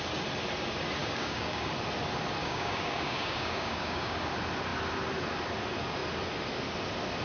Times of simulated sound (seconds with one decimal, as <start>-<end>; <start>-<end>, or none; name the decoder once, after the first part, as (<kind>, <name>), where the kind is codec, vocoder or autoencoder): 1.0-1.7 (codec, DAC); 2.4-4.2